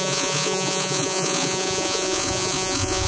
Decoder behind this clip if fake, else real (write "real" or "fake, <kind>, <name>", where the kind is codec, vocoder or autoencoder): fake, vocoder, Vocos